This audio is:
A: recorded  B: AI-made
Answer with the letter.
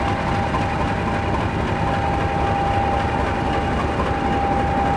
A